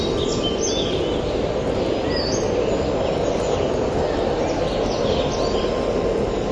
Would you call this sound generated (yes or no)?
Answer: no